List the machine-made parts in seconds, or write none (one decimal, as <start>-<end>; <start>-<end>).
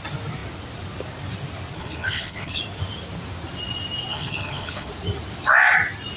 1.8-2.6; 4.1-4.9